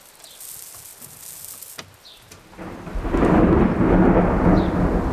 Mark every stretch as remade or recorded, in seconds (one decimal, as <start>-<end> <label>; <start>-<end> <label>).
0.0-5.1 recorded